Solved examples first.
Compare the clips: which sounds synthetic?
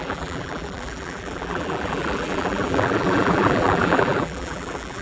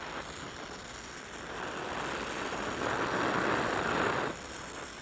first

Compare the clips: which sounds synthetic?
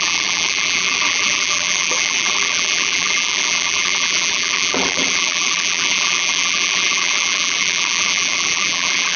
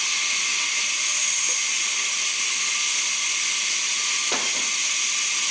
first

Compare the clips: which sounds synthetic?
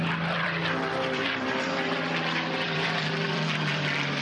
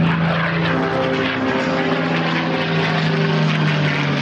first